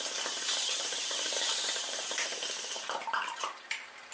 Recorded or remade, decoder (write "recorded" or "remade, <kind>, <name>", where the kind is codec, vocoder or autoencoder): remade, vocoder, BigVGAN v2